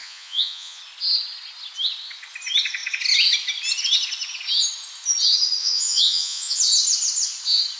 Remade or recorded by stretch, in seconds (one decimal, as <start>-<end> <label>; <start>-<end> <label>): 0.0-0.8 remade; 0.8-5.6 recorded; 5.6-6.6 remade; 6.6-7.8 recorded

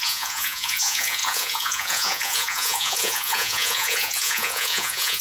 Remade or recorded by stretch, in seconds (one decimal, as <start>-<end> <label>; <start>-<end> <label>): 0.0-5.2 remade

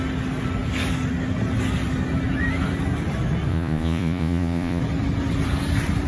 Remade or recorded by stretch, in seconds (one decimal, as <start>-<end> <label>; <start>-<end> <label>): 0.0-3.5 recorded; 3.5-4.8 remade; 4.8-6.1 recorded

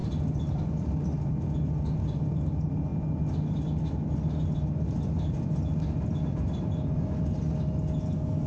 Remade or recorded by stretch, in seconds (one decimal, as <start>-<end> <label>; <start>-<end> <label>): 0.0-8.5 recorded

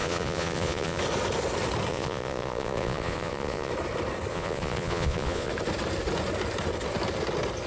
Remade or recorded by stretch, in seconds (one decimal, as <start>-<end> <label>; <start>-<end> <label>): 0.0-1.0 remade; 1.0-1.9 recorded; 1.9-3.7 remade; 3.7-4.3 recorded; 4.3-5.5 remade; 5.5-7.7 recorded

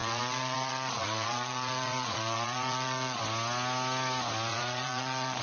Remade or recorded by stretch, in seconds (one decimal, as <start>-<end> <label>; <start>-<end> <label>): 0.0-3.2 remade; 3.2-4.5 recorded; 4.5-5.4 remade